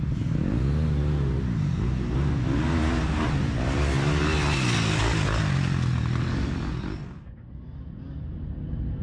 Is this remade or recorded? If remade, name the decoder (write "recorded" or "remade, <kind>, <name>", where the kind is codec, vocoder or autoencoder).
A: recorded